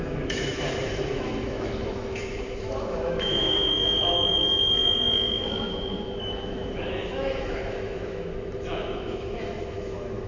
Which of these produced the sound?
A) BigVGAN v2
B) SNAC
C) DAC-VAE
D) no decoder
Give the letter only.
C